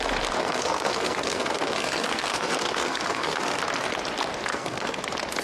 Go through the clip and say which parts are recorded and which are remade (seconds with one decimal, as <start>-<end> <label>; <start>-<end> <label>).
0.0-0.4 recorded; 0.4-3.6 remade; 3.6-4.5 recorded; 4.5-5.0 remade; 5.0-5.4 recorded